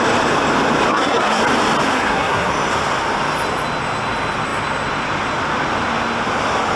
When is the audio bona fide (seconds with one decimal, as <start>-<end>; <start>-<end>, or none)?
0.0-0.9; 1.4-1.9; 2.5-6.8